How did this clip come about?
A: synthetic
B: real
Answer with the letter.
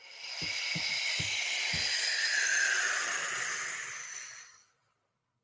B